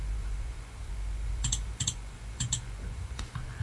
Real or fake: fake